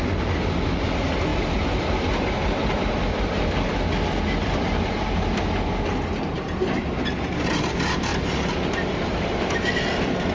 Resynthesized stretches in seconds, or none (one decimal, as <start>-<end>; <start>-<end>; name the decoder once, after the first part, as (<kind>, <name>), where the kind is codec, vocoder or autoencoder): 1.3-5.4 (vocoder, BigVGAN v2); 8.1-9.3